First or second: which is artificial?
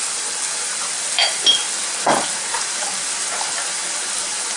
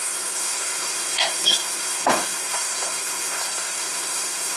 second